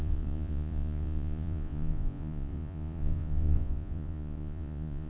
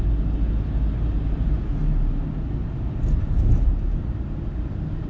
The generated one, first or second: first